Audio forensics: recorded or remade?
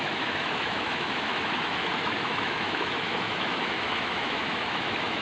remade